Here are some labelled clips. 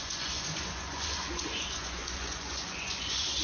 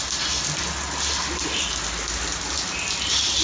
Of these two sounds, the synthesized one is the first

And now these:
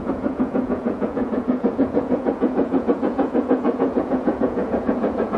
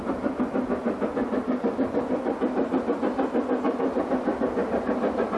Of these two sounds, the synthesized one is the first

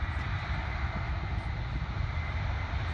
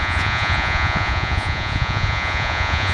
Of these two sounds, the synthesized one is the second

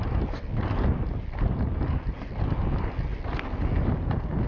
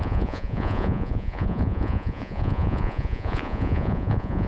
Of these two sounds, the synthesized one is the second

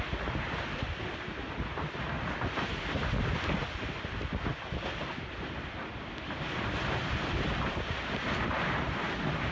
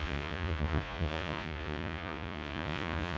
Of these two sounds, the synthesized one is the second